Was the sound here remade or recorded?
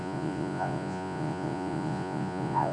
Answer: remade